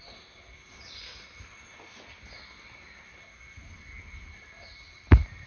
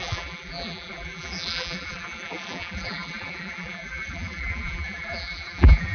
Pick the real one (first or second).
first